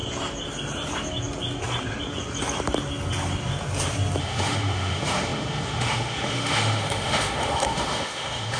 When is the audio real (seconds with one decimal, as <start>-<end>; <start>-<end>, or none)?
0.0-4.2